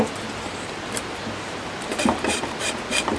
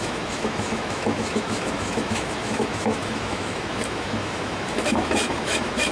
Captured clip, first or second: first